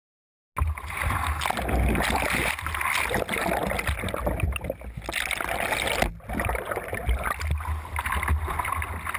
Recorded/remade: recorded